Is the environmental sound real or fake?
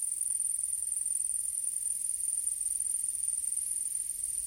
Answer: fake